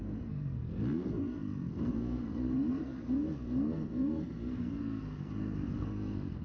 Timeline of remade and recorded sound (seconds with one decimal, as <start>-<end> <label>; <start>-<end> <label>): 0.0-6.4 remade